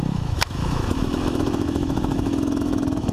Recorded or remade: remade